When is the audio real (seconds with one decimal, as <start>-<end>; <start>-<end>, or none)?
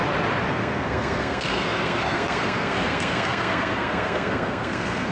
0.0-0.5